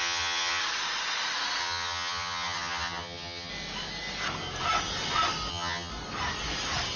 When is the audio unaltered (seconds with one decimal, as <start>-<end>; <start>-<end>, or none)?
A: 0.6-1.6; 3.5-5.5; 5.9-7.0